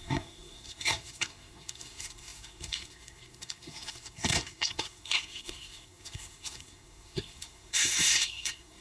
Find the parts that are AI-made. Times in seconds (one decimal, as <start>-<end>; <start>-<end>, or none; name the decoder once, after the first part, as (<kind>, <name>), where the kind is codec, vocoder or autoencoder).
0.0-8.8 (codec, SNAC)